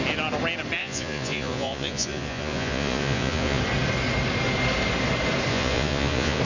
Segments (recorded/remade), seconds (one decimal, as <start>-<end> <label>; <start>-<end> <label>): 0.0-0.8 recorded; 0.8-3.6 remade; 3.6-5.5 recorded; 5.5-6.4 remade